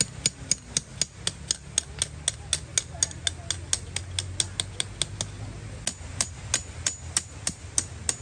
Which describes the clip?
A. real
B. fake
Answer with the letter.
A